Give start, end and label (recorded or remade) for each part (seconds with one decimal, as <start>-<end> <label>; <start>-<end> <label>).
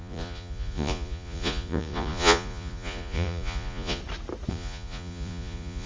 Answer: 0.0-4.0 remade; 4.0-4.5 recorded; 4.5-5.9 remade